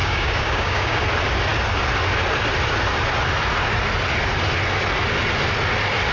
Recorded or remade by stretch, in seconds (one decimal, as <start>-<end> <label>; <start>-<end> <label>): 0.0-1.0 remade; 1.0-6.1 recorded